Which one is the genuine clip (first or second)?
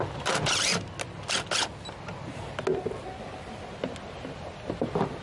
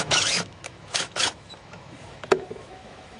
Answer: first